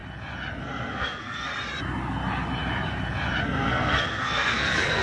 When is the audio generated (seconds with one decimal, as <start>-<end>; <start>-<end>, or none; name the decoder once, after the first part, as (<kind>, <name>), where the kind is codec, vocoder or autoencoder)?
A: 0.6-1.5 (codec, SNAC); 3.4-5.0